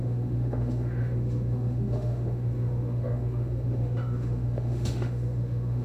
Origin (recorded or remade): remade